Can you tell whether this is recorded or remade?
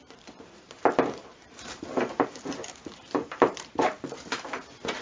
remade